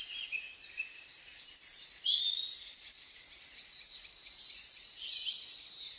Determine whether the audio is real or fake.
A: real